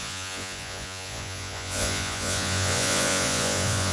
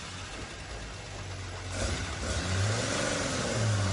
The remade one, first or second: first